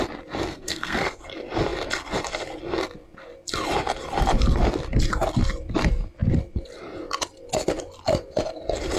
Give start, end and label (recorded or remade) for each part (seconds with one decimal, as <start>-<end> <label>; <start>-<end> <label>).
0.0-0.5 recorded; 0.5-1.2 remade; 1.2-9.0 recorded